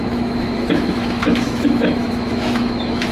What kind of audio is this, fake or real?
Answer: fake